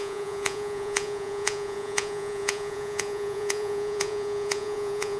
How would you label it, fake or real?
fake